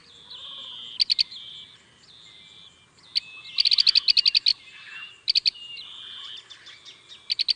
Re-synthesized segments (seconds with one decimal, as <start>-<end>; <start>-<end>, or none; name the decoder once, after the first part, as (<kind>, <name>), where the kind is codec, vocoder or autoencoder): 4.5-6.3 (vocoder, BigVGAN v2)